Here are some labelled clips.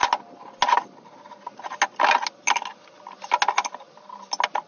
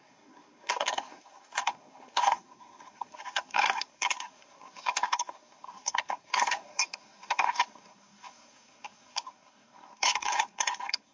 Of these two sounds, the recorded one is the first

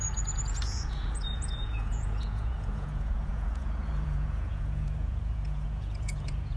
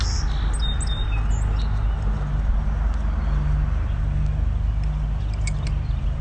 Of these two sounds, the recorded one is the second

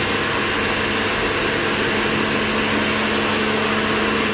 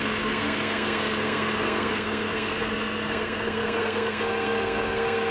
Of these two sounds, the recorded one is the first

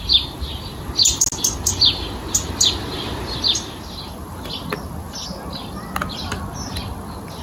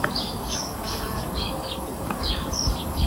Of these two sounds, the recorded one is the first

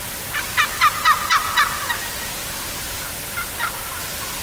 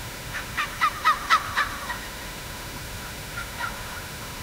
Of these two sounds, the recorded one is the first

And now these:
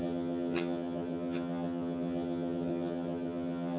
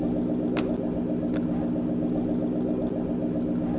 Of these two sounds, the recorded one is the second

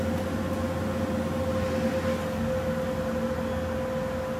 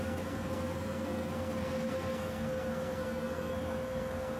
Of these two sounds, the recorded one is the first